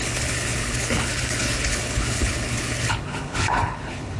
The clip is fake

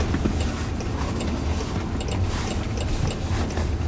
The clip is real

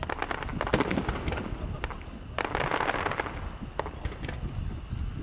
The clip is real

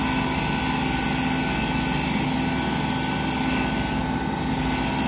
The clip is real